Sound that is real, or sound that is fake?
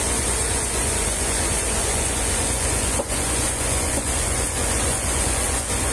fake